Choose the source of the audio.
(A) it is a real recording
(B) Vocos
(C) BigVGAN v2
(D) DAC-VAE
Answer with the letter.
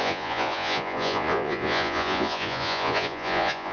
B